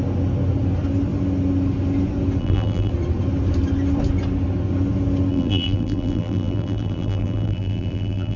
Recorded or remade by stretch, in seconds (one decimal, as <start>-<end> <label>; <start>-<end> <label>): 0.0-2.4 recorded; 2.4-2.9 remade; 2.9-5.3 recorded; 5.3-8.4 remade